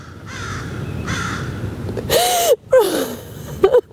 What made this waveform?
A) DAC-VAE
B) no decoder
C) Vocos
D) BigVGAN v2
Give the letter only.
B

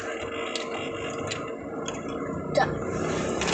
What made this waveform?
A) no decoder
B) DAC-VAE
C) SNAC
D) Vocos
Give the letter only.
A